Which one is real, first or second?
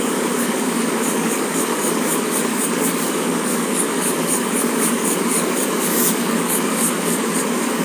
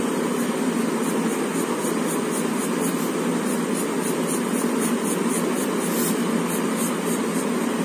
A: second